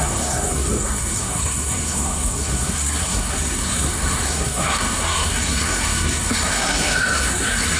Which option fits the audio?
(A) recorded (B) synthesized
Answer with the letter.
B